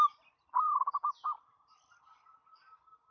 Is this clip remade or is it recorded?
recorded